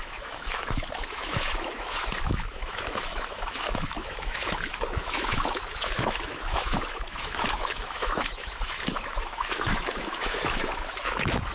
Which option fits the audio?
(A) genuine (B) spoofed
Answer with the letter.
B